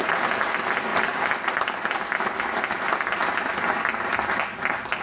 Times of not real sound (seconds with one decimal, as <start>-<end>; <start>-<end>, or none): none